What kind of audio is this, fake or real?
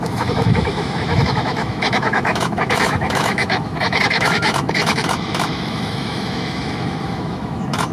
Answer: fake